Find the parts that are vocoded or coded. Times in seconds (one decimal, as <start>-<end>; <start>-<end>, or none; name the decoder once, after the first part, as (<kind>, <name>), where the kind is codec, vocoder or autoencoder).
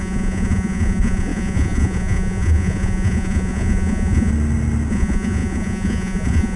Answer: 0.0-4.3 (vocoder, Vocos); 4.9-6.6